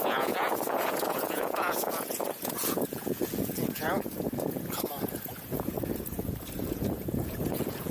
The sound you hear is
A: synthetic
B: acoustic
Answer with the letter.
A